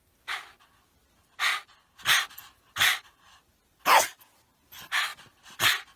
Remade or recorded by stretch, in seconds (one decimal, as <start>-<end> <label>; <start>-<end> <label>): 0.0-5.1 recorded; 5.1-6.0 remade